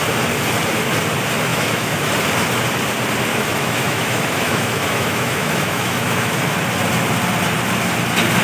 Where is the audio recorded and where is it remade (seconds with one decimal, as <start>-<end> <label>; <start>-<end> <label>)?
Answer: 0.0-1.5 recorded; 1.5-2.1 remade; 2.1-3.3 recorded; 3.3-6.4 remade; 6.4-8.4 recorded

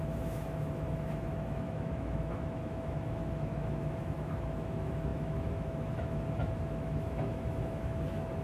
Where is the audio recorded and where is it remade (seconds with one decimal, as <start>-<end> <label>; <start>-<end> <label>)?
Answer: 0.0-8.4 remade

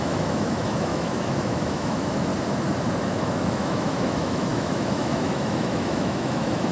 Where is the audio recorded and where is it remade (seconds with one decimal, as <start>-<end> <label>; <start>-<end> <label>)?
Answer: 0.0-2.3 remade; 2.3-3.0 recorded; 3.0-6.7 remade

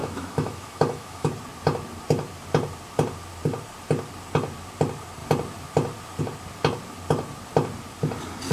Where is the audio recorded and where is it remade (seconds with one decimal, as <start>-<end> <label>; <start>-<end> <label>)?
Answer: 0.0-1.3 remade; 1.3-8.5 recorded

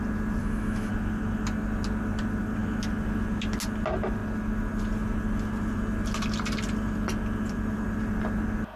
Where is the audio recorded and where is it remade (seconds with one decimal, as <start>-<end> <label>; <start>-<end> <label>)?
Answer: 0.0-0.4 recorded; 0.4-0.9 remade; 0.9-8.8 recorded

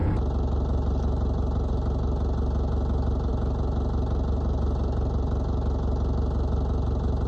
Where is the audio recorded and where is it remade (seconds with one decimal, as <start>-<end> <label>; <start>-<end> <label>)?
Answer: 0.0-7.3 recorded

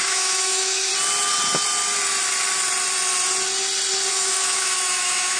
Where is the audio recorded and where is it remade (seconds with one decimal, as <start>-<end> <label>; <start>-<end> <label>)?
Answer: 0.0-0.9 remade; 0.9-4.1 recorded; 4.1-5.4 remade

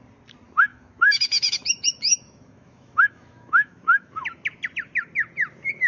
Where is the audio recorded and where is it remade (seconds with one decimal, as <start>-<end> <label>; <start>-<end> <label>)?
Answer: 0.0-0.7 recorded; 0.7-4.2 remade; 4.2-5.9 recorded